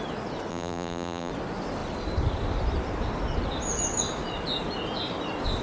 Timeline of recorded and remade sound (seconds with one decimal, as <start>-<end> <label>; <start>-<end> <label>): 0.0-0.5 recorded; 0.5-1.3 remade; 1.3-5.6 recorded